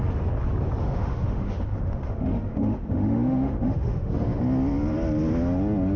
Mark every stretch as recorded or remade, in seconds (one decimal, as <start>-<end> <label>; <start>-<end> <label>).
0.0-0.8 recorded; 0.8-4.4 remade; 4.4-6.0 recorded